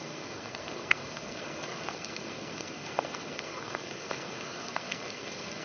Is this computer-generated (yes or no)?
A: yes